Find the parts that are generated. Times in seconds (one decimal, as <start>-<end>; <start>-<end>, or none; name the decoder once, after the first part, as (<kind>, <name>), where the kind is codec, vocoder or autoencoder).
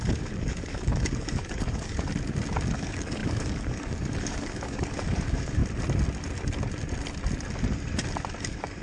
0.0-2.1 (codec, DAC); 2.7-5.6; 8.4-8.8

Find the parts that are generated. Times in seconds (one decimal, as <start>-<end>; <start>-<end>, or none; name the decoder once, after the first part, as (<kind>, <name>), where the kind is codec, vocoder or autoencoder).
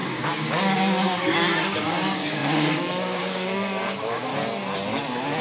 0.0-4.3 (codec, DAC)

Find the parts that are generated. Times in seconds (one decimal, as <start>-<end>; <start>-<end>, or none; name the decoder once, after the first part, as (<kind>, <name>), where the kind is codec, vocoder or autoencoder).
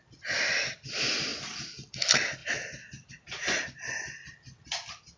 none